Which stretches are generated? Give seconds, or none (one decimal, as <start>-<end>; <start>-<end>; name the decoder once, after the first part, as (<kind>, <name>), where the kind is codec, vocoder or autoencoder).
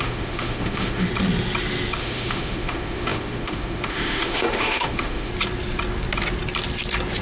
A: 0.0-1.1 (autoencoder, DAC-VAE); 2.0-5.3